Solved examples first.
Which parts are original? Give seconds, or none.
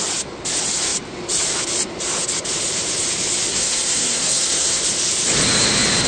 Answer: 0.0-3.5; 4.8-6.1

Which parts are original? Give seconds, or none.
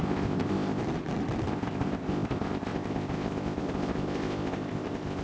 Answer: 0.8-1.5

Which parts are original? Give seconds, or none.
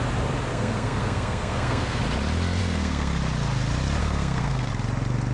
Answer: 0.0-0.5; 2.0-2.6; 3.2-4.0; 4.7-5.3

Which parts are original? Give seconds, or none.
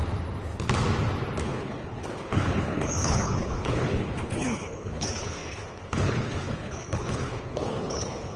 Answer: 0.0-1.4